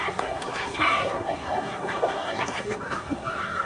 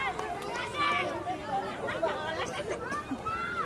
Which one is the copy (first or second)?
first